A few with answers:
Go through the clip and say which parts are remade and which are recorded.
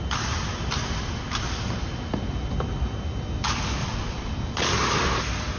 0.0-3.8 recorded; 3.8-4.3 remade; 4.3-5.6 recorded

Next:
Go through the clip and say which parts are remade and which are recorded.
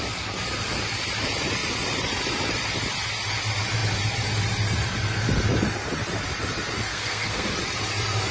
0.0-6.9 recorded; 6.9-7.5 remade; 7.5-8.3 recorded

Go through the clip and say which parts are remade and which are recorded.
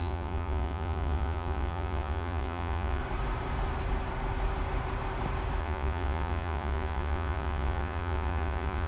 0.0-3.0 remade; 3.0-5.6 recorded; 5.6-8.9 remade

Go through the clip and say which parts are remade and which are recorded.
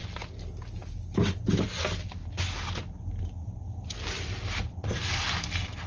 0.0-5.9 recorded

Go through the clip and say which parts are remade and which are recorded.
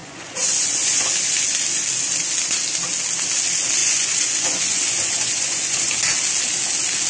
0.0-1.1 remade; 1.1-3.8 recorded; 3.8-5.9 remade; 5.9-7.1 recorded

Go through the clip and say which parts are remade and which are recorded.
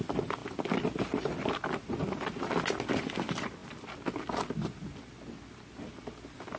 0.0-6.6 recorded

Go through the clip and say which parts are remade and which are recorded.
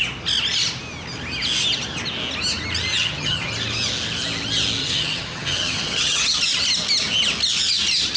0.0-2.9 recorded; 2.9-3.5 remade; 3.5-4.8 recorded; 4.8-6.4 remade; 6.4-8.2 recorded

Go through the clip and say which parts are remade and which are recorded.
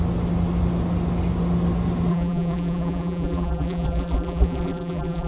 0.0-2.1 recorded; 2.1-5.3 remade